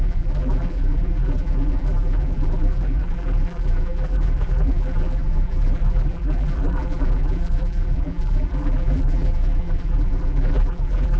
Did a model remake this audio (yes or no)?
yes